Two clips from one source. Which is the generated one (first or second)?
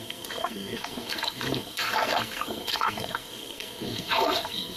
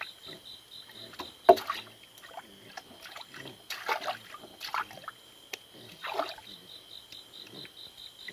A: first